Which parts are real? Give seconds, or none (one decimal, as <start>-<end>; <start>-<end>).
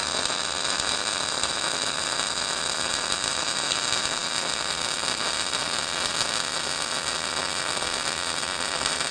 0.0-9.1